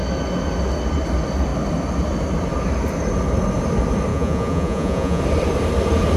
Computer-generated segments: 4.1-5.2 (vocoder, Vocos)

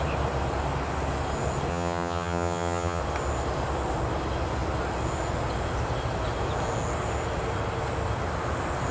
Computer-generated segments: 1.7-3.0 (vocoder, HiFi-GAN)

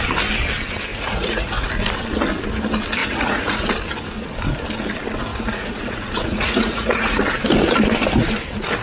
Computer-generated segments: 0.9-1.7 (vocoder, Vocos); 3.0-3.7; 5.3-7.2

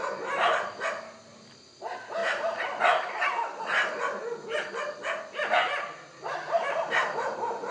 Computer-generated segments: none

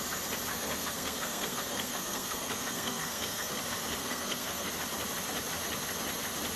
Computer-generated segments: 0.5-3.6 (codec, SNAC); 4.0-4.7

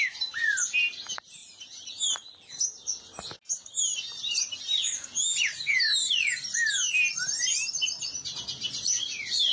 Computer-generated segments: none